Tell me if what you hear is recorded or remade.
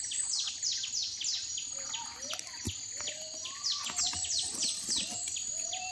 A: recorded